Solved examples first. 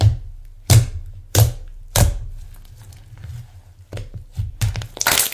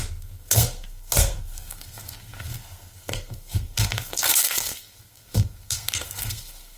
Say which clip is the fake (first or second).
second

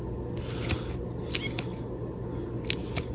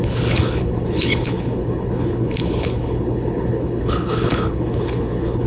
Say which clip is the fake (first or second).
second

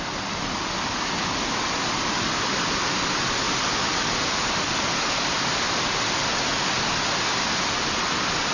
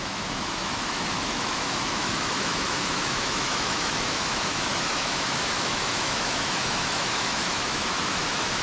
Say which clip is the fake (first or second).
second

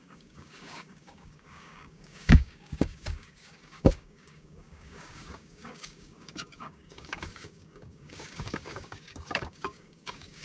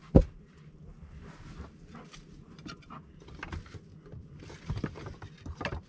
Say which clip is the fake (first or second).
first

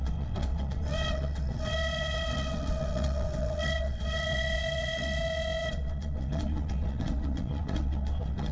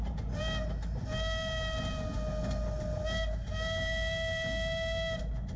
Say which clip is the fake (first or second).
first